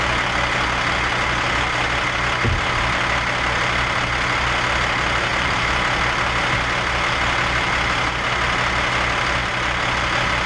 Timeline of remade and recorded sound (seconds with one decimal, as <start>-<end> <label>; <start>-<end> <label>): 0.0-5.3 recorded; 5.3-6.0 remade; 6.0-10.5 recorded